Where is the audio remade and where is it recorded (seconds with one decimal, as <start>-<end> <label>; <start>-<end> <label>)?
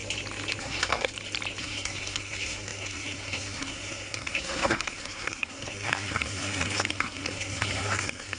0.0-0.6 recorded; 0.6-1.1 remade; 1.1-1.6 recorded; 1.6-8.4 remade